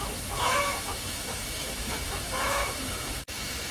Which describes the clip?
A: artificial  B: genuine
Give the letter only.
A